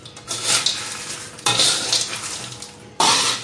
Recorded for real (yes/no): yes